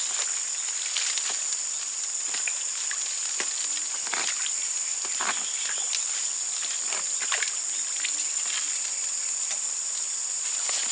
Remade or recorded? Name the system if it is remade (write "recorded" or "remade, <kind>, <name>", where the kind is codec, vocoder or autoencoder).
recorded